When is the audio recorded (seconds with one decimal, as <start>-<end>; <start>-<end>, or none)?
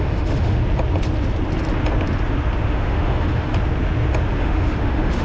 0.6-2.6; 3.5-4.4